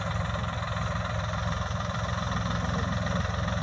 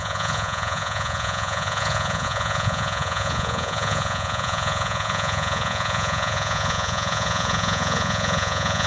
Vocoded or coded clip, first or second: second